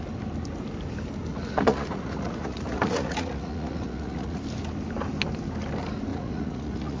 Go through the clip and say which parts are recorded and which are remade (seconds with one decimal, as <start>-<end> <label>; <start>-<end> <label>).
0.0-1.3 recorded; 1.3-4.4 remade; 4.4-6.1 recorded; 6.1-7.0 remade